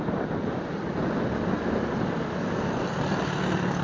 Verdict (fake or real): real